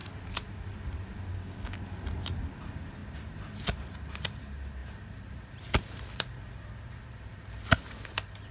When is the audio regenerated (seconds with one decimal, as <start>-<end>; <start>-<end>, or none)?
1.3-1.8

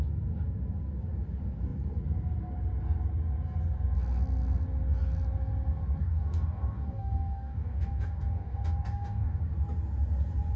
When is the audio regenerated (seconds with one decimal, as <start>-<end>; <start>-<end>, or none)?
6.0-9.4